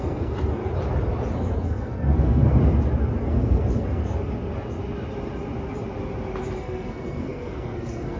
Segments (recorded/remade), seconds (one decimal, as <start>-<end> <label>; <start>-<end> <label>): 0.0-0.6 remade; 0.6-1.3 recorded; 1.3-2.6 remade; 2.6-3.2 recorded; 3.2-4.0 remade; 4.0-6.6 recorded; 6.6-8.2 remade